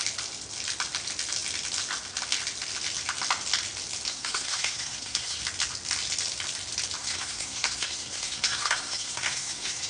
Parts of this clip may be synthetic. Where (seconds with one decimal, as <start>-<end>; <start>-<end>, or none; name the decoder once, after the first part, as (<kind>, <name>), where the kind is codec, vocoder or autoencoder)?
4.1-5.4 (codec, SNAC); 7.0-9.9